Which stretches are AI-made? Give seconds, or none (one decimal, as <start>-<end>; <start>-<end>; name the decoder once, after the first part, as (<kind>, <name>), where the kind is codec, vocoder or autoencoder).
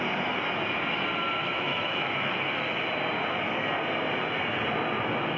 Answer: 1.4-2.8 (autoencoder, DAC-VAE)